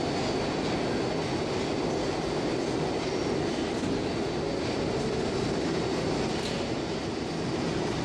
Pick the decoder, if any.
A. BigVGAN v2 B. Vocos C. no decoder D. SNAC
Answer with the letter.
C